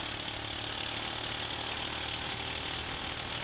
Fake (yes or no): no